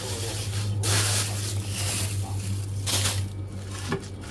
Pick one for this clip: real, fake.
real